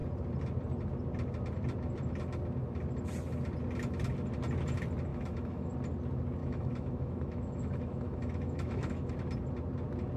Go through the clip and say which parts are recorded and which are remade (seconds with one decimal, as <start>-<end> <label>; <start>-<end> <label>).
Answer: 0.0-5.1 recorded; 5.1-5.7 remade; 5.7-6.4 recorded; 6.4-9.1 remade; 9.1-10.2 recorded